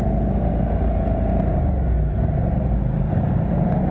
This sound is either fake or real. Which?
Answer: real